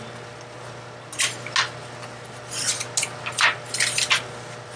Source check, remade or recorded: recorded